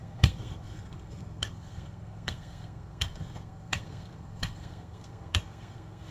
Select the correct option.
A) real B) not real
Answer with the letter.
B